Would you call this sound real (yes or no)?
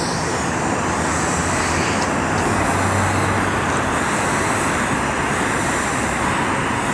yes